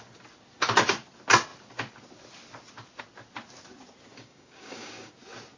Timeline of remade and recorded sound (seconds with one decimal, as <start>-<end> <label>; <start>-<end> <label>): 0.0-4.1 recorded; 4.1-5.1 remade; 5.1-5.6 recorded